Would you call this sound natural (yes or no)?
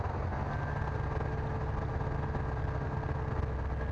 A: yes